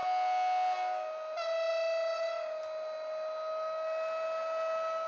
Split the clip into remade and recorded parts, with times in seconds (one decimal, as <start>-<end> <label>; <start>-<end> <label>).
0.0-5.1 recorded